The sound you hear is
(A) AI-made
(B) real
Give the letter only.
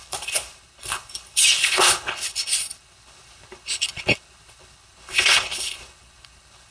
A